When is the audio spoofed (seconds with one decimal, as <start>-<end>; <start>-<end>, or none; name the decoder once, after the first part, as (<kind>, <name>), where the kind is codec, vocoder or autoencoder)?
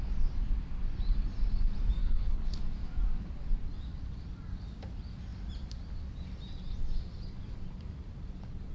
2.0-2.6 (codec, HILCodec)